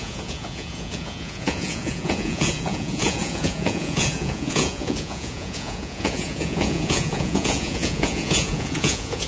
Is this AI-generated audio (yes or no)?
yes